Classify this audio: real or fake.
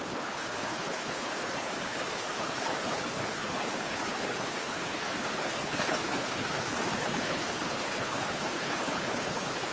fake